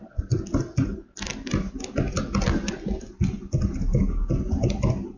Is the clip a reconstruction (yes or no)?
no